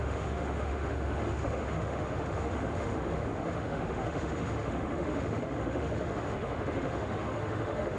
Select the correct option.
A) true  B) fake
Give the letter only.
B